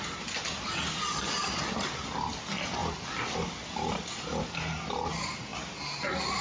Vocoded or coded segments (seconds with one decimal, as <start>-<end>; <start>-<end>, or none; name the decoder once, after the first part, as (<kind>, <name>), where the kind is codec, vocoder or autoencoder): none